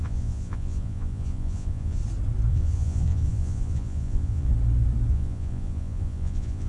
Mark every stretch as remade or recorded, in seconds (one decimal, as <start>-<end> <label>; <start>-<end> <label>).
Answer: 0.0-2.0 remade; 2.0-2.5 recorded; 2.5-4.5 remade; 4.5-5.1 recorded; 5.1-6.7 remade